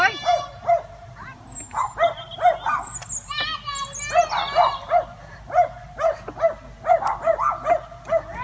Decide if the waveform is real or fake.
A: real